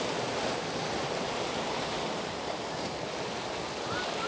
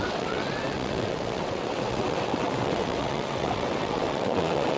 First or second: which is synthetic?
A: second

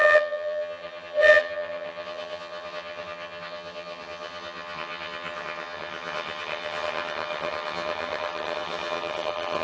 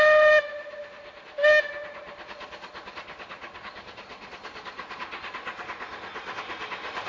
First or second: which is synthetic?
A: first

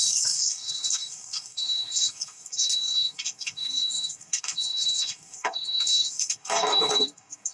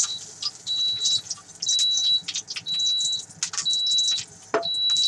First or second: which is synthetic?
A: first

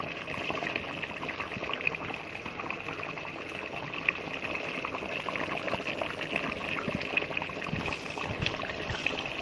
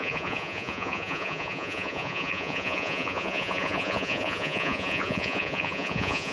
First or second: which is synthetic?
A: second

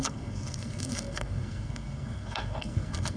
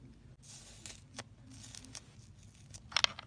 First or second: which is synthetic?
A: first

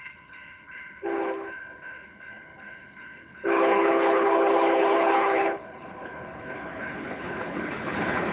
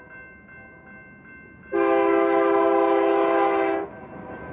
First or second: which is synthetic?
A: first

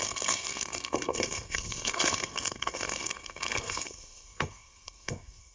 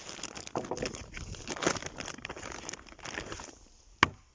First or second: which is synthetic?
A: first